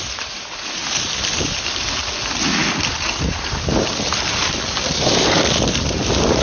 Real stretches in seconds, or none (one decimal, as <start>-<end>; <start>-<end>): 0.0-6.4